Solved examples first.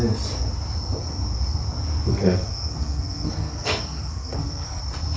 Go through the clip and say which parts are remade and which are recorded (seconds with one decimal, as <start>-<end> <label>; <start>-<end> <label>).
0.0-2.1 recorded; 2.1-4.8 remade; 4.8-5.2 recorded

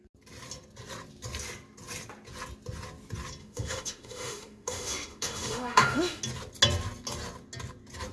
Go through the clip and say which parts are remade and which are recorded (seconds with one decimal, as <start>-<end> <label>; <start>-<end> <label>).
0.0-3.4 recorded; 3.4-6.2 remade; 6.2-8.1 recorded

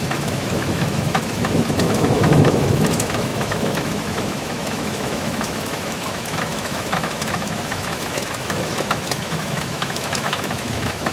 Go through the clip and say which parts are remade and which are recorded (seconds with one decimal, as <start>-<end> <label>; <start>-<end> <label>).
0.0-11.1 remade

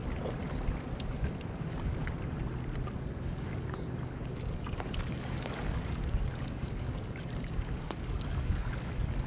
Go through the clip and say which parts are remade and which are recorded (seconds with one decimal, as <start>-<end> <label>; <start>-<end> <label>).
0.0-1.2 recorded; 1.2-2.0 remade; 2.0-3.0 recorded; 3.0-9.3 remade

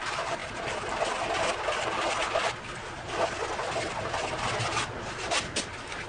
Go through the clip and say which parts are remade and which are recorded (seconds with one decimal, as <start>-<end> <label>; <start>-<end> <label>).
0.0-0.4 remade; 0.4-2.9 recorded; 2.9-6.1 remade

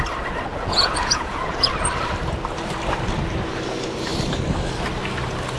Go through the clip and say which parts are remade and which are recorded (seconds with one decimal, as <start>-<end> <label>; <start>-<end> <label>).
0.0-0.5 recorded; 0.5-1.7 remade; 1.7-5.6 recorded

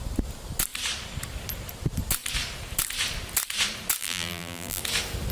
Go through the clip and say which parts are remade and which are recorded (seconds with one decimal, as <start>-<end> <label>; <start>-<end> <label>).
0.0-4.0 recorded; 4.0-4.8 remade; 4.8-5.3 recorded

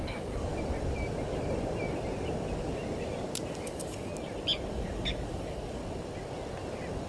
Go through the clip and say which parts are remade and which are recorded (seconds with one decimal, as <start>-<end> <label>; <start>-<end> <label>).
0.0-0.5 remade; 0.5-3.5 recorded; 3.5-4.1 remade; 4.1-4.7 recorded; 4.7-5.8 remade; 5.8-7.1 recorded